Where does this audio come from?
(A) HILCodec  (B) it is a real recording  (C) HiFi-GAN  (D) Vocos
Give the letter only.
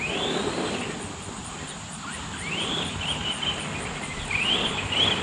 B